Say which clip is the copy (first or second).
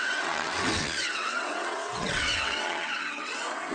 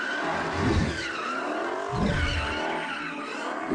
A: first